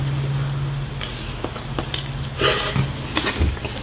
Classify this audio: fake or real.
real